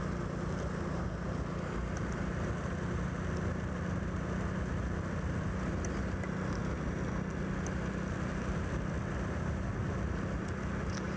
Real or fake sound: real